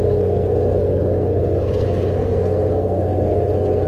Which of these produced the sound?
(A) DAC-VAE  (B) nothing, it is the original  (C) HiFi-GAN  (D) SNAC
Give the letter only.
D